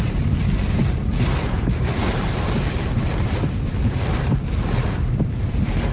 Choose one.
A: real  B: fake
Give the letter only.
B